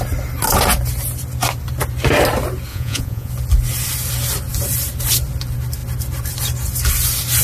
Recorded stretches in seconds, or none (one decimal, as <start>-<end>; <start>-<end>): 0.0-2.7; 3.3-7.4